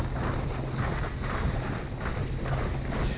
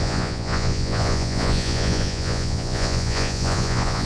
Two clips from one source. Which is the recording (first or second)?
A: first